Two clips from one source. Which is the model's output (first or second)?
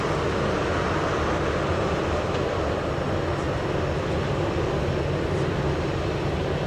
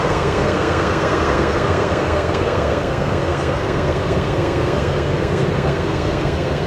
second